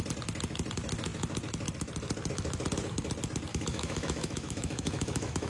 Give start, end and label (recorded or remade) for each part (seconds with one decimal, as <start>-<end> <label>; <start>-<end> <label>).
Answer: 0.0-3.5 recorded; 3.5-5.5 remade